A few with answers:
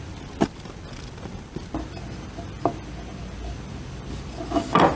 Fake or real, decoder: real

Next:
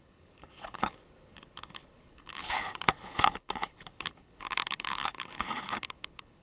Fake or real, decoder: fake, codec, HILCodec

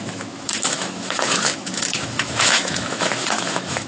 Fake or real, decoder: fake, autoencoder, DAC-VAE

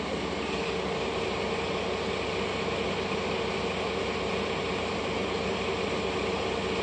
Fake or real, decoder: real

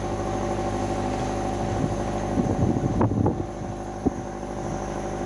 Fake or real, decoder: real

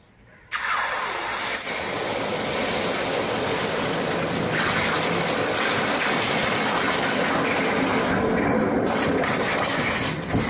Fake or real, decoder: fake, vocoder, BigVGAN v2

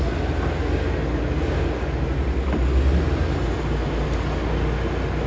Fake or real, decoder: real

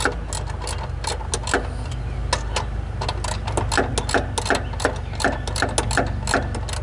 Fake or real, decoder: real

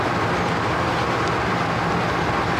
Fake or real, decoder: real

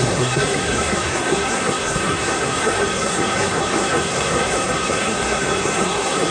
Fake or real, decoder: fake, codec, SNAC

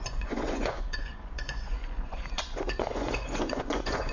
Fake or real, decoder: fake, vocoder, Vocos